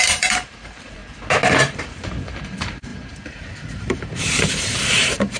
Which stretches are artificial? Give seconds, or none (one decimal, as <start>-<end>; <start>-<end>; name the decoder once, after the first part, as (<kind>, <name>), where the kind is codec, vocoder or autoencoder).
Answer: 0.0-1.0 (vocoder, BigVGAN v2); 1.6-5.4